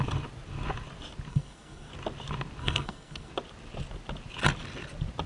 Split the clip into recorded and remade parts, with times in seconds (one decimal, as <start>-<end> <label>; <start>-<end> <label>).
0.0-1.3 recorded; 1.3-1.9 remade; 1.9-2.6 recorded; 2.6-3.3 remade; 3.3-5.3 recorded